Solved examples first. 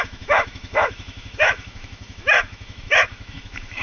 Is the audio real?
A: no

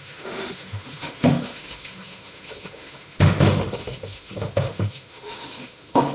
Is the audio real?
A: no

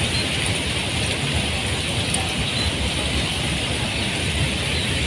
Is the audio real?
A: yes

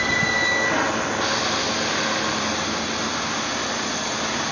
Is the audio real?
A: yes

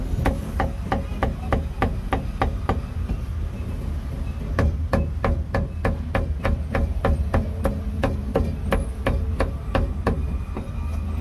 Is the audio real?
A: yes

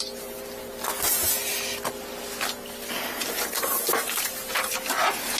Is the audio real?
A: yes